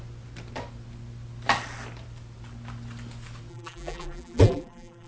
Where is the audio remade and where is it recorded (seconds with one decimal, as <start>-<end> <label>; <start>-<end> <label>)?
0.0-3.5 recorded; 3.5-5.1 remade